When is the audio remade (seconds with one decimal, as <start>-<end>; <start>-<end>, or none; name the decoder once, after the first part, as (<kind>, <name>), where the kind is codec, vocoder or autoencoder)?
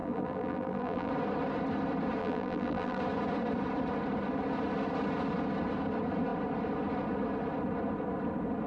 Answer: 0.0-1.1 (vocoder, BigVGAN v2); 2.2-3.0